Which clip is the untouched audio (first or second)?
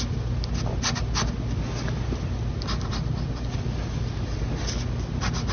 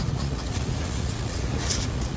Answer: first